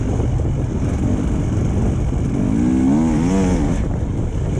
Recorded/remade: recorded